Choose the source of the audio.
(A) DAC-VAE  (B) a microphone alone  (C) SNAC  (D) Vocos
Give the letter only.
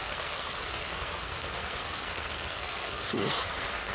C